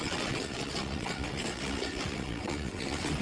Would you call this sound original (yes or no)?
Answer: no